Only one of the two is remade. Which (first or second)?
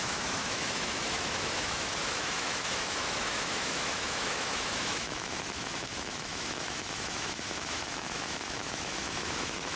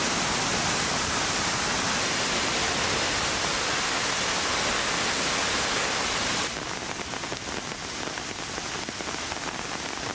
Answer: first